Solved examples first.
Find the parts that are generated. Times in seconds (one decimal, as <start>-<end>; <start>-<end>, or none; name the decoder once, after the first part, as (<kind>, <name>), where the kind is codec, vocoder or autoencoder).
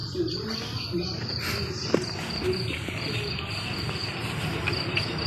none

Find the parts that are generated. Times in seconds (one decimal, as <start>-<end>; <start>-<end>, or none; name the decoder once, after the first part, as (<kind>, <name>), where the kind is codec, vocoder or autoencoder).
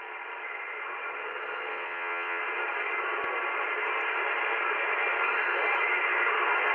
1.7-2.4 (vocoder, WaveNeXt)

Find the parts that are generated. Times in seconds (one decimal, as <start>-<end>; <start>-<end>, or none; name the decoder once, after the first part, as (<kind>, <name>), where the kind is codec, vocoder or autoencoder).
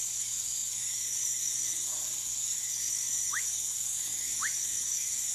0.0-5.3 (codec, DAC)